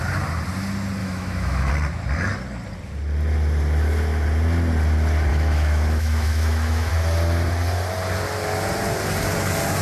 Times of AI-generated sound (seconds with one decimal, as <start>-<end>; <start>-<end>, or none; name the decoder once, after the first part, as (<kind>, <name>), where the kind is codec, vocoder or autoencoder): 1.0-1.7 (autoencoder, DAC-VAE); 5.3-6.9